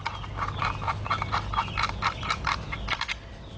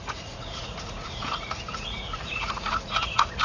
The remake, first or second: second